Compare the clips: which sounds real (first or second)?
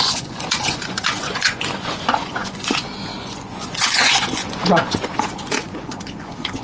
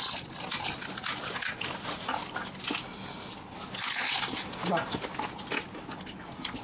second